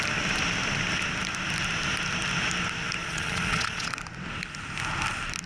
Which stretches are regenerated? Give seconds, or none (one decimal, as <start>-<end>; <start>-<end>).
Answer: 3.0-3.9

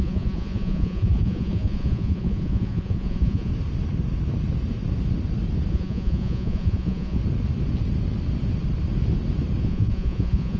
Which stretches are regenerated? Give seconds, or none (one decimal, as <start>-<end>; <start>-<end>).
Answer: 0.0-3.5; 5.7-7.2; 9.6-10.6

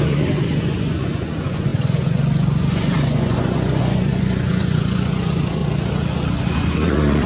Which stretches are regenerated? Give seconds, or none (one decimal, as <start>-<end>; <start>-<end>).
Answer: 0.0-5.6; 6.4-7.3

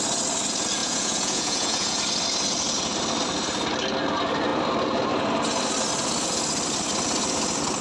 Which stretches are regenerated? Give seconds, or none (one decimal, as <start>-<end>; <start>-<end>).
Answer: 0.8-2.0

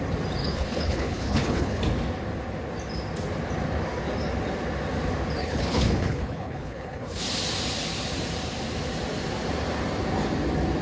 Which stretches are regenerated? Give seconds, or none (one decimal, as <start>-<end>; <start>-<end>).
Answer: 0.4-1.8; 5.4-7.2

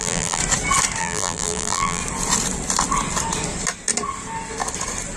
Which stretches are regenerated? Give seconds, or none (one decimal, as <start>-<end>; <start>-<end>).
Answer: 0.0-0.4; 1.0-2.0

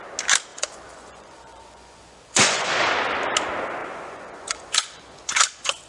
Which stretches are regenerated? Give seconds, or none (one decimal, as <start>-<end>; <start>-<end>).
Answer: 0.5-2.7; 3.8-5.9